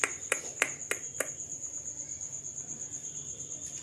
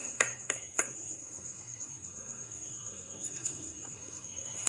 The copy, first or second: second